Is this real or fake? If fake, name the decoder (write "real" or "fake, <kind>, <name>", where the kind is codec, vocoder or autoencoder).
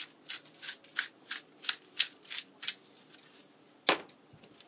real